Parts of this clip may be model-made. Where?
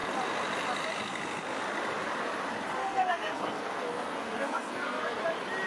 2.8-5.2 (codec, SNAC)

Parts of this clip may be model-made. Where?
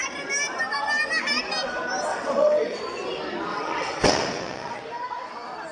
2.1-2.8 (vocoder, WaveNeXt); 3.5-4.8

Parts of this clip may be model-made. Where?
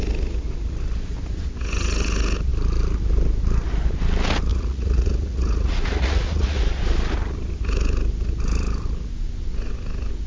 4.5-6.6 (vocoder, Vocos)